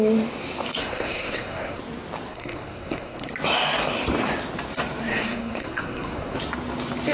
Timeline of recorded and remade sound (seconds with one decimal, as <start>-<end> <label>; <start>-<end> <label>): 0.0-0.8 recorded; 0.8-1.8 remade; 1.8-2.3 recorded; 2.3-3.3 remade; 3.3-5.1 recorded; 5.1-6.4 remade; 6.4-7.1 recorded